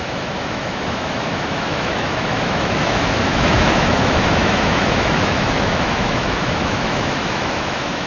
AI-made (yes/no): yes